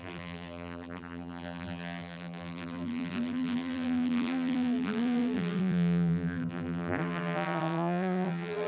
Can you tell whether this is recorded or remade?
remade